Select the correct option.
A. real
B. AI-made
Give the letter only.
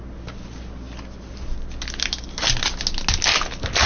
A